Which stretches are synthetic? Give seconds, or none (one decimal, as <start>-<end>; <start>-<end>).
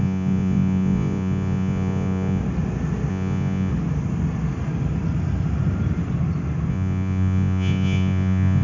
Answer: 0.0-2.4; 3.1-3.7; 6.7-8.6